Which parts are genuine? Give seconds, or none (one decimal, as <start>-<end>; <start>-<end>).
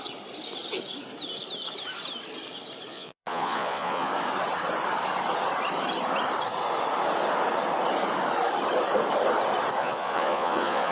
0.0-2.9; 4.1-9.8